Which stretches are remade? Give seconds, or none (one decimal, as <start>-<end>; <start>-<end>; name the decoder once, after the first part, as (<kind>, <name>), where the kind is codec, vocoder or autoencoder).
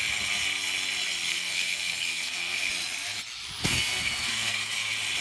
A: 1.3-2.7 (codec, SNAC); 3.6-4.6